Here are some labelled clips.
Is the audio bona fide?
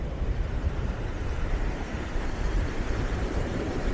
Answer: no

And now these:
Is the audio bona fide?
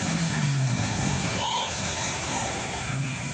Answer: no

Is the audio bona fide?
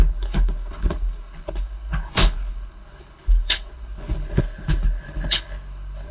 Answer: no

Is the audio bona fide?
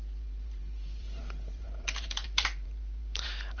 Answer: no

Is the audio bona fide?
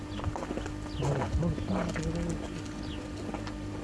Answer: yes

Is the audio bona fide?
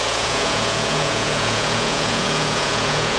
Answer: no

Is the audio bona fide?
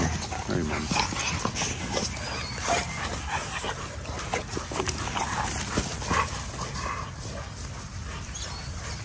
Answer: yes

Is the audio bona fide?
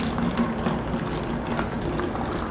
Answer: yes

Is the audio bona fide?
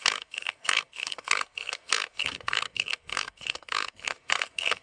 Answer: no